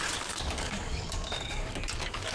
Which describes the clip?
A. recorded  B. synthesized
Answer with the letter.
B